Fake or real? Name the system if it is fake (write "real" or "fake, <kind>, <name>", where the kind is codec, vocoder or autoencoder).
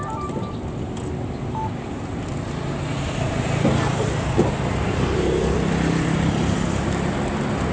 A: fake, vocoder, BigVGAN v2